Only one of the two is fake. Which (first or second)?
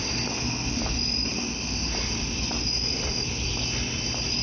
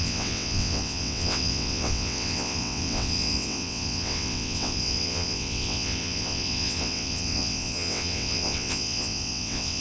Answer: second